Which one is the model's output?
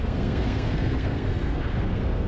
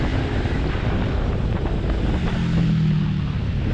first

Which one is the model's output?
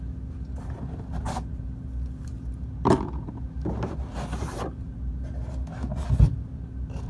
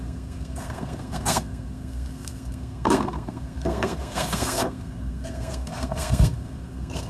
second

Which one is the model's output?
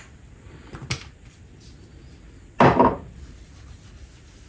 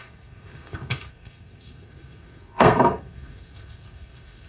second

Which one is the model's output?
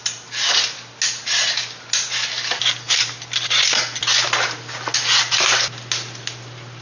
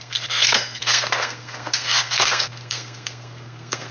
second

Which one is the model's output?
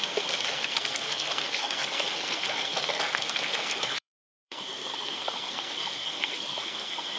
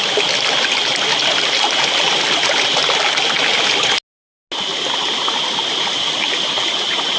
first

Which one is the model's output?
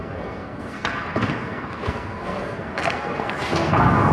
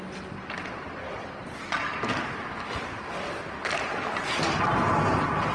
first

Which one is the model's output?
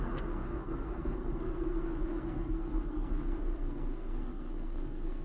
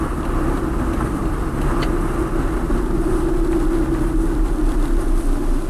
first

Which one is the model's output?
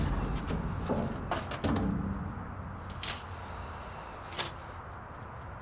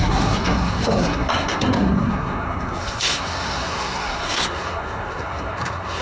second